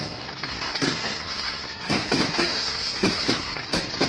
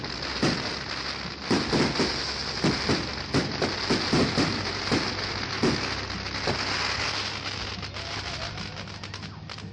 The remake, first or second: first